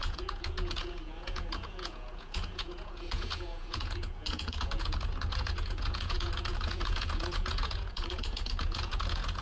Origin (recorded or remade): remade